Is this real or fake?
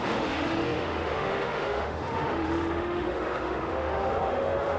fake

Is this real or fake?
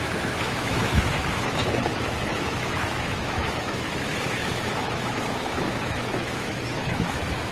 fake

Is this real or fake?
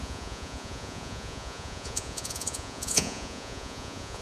fake